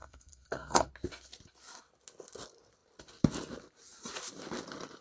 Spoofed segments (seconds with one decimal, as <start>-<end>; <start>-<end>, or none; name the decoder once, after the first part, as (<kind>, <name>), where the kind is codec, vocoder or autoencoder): 0.0-0.9 (codec, SNAC)